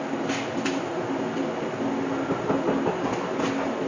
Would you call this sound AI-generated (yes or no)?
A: no